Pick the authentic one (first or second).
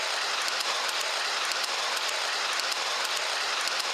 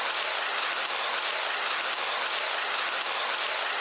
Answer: second